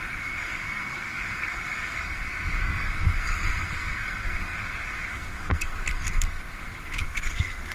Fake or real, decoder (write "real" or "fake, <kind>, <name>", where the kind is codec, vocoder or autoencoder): fake, codec, SNAC